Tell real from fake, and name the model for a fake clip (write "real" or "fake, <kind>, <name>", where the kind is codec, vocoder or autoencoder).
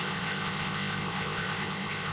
fake, codec, ZipCodec